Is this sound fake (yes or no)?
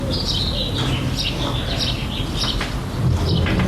no